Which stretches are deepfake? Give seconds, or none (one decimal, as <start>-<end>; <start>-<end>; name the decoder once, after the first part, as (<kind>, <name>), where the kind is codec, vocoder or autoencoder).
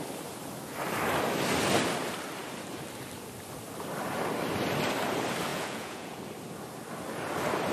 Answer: 5.5-6.2 (vocoder, Vocos)